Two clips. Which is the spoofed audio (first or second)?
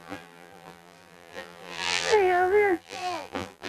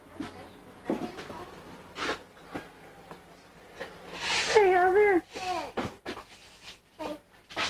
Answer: first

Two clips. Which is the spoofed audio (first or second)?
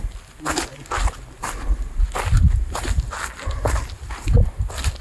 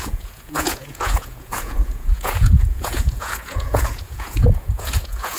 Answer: second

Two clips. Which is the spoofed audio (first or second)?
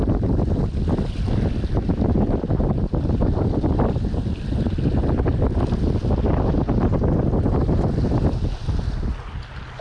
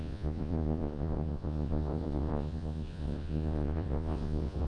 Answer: second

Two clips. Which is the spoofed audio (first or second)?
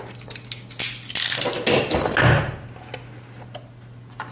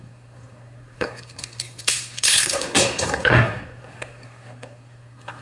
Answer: second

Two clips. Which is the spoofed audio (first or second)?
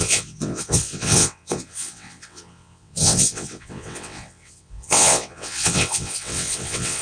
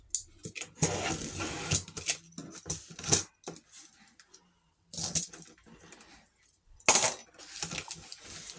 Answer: first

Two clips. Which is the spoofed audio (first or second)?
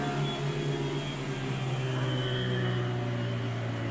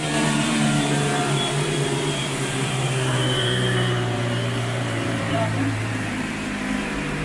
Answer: second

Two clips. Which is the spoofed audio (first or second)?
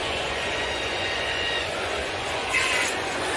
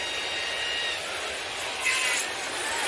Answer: first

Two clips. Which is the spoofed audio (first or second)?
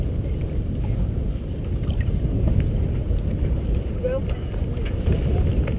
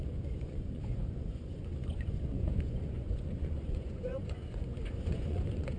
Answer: second